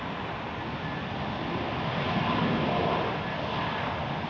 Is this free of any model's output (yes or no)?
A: yes